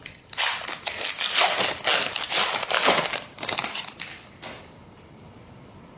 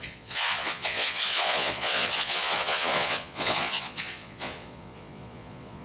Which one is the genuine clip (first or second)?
first